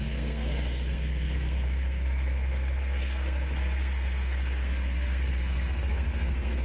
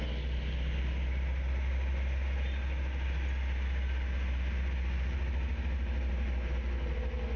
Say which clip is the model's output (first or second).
first